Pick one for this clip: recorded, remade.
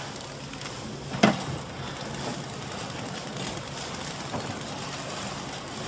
recorded